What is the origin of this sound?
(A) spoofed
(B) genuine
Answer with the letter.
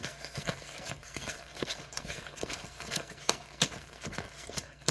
A